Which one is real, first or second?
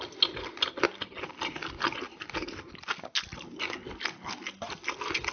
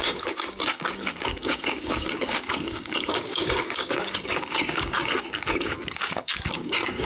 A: first